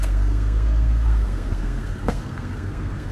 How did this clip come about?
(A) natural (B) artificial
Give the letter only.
B